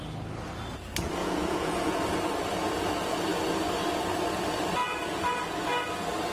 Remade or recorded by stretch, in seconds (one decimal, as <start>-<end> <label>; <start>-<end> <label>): 0.0-1.2 recorded; 1.2-2.0 remade; 2.0-4.8 recorded; 4.8-5.4 remade; 5.4-6.3 recorded